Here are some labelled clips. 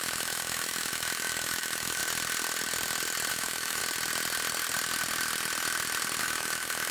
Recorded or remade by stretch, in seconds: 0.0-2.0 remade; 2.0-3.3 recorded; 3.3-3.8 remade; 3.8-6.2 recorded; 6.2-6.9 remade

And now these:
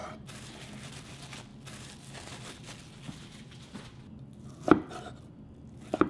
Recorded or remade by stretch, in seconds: 0.0-6.1 recorded

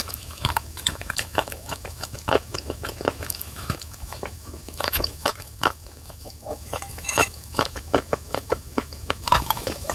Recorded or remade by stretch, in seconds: 0.0-9.9 remade

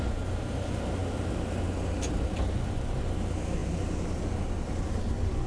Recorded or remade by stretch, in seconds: 0.0-5.5 recorded

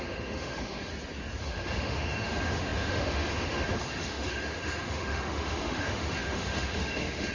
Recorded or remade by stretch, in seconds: 0.0-0.9 remade; 0.9-1.4 recorded; 1.4-7.3 remade

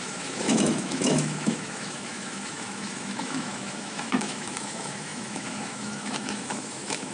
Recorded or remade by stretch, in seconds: 0.0-7.1 remade

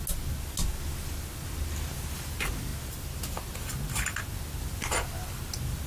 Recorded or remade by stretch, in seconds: 0.0-5.9 recorded